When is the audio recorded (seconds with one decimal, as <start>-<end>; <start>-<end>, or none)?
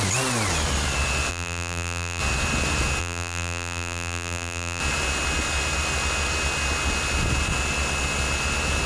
0.0-1.3; 2.2-3.0; 4.8-8.9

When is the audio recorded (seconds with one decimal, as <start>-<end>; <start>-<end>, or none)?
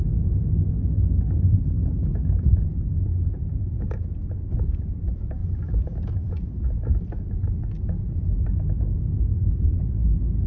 0.0-10.5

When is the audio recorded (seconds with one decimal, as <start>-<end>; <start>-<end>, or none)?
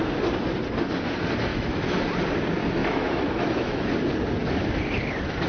0.0-1.5; 2.0-2.8; 3.9-5.5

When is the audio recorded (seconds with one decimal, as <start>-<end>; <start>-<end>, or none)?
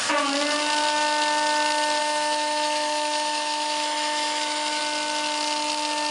0.0-2.0; 4.8-6.1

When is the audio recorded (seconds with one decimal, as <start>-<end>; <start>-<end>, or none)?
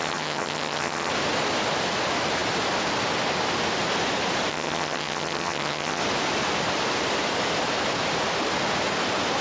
1.1-4.5; 6.0-9.4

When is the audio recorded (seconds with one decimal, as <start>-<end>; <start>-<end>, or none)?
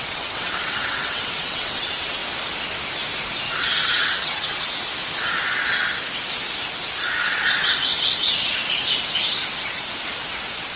2.2-3.5; 4.9-7.2; 8.3-10.8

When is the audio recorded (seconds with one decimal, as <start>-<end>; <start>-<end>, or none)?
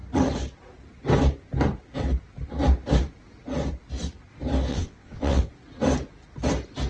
0.0-4.7; 5.5-6.9